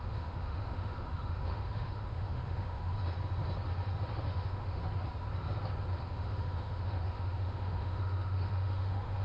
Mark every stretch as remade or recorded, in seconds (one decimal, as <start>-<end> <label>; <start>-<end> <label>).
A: 0.0-2.9 remade; 2.9-4.2 recorded; 4.2-4.8 remade; 4.8-6.0 recorded; 6.0-9.2 remade